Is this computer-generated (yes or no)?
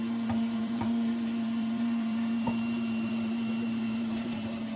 yes